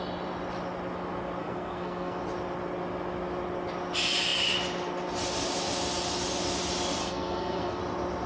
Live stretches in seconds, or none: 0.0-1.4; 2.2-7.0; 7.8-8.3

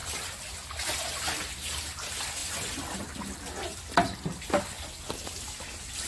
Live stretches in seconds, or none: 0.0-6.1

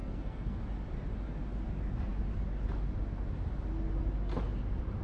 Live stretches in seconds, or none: 0.6-5.0

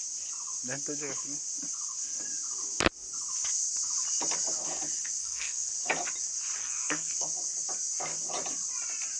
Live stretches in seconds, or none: 0.0-5.2; 5.7-6.6; 7.3-9.2

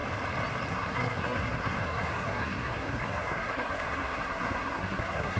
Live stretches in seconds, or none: 0.0-0.7

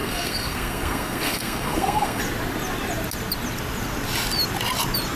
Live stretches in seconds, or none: 2.2-5.2

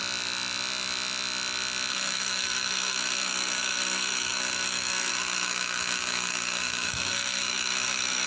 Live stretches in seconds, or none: 0.0-1.9